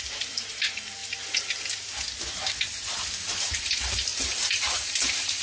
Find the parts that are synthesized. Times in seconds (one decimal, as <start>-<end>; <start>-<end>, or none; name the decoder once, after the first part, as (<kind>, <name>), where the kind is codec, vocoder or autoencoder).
0.0-1.0 (vocoder, BigVGAN v2); 3.4-5.4